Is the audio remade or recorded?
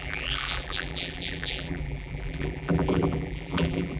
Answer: remade